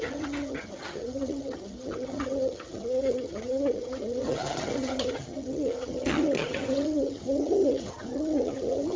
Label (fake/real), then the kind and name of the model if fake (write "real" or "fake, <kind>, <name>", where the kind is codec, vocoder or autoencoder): fake, vocoder, HiFi-GAN